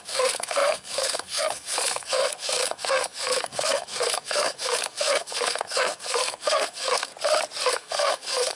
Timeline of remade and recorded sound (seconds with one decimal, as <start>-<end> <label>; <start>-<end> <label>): 0.0-7.1 remade; 7.1-7.7 recorded; 7.7-8.6 remade